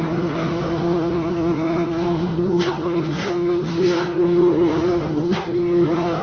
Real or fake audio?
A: fake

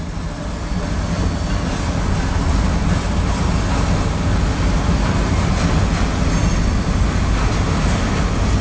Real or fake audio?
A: real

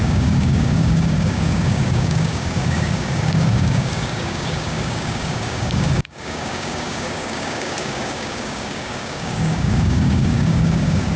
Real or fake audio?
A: fake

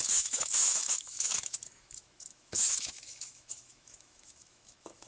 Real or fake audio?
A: fake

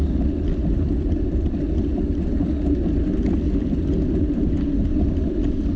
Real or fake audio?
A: real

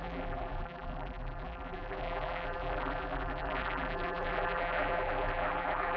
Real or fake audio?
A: fake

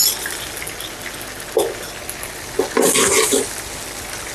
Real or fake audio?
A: real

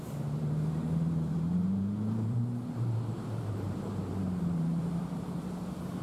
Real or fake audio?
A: fake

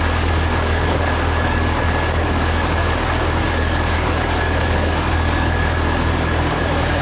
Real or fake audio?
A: fake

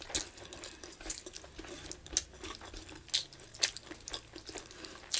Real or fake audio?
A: real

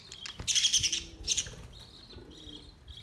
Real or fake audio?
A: real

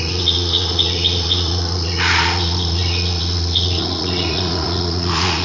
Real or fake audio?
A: fake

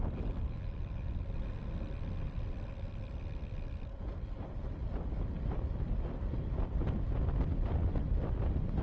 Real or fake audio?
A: real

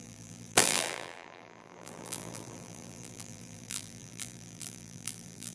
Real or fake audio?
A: fake